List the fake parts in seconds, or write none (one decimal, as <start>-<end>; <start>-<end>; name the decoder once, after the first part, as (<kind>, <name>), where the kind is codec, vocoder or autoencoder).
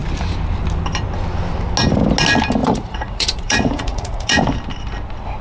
2.6-4.4 (vocoder, Vocos)